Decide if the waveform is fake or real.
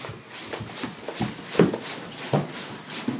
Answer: real